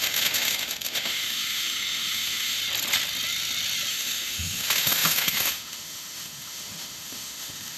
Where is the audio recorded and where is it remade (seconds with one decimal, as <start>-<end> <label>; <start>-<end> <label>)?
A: 0.0-2.6 remade; 2.6-3.9 recorded; 3.9-7.8 remade

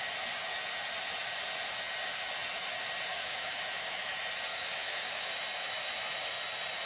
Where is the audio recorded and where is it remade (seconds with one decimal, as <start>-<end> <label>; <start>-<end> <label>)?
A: 0.0-3.1 recorded; 3.1-4.1 remade; 4.1-4.5 recorded; 4.5-5.3 remade; 5.3-6.9 recorded

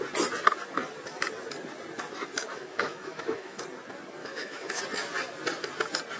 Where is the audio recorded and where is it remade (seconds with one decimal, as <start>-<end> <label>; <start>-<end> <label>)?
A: 0.0-2.5 recorded; 2.5-3.6 remade; 3.6-4.2 recorded; 4.2-4.8 remade; 4.8-6.2 recorded

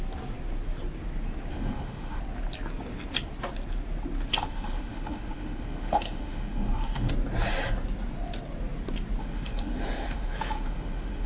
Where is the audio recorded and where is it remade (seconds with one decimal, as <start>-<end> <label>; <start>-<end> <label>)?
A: 0.0-1.5 recorded; 1.5-2.2 remade; 2.2-4.3 recorded; 4.3-7.1 remade; 7.1-9.2 recorded; 9.2-11.3 remade

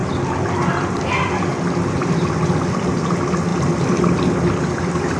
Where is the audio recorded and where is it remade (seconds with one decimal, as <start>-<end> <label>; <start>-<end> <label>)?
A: 0.0-5.2 recorded